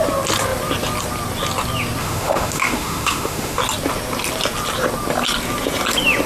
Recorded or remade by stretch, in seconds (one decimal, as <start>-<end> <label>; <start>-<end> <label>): 0.0-2.0 recorded; 2.0-3.6 remade; 3.6-6.3 recorded